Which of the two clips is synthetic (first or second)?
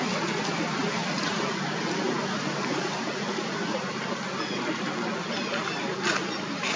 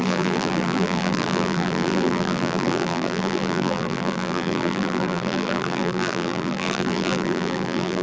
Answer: second